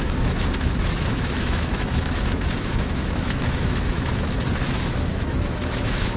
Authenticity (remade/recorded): remade